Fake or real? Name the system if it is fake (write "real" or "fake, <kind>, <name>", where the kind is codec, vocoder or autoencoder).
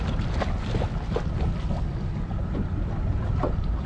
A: real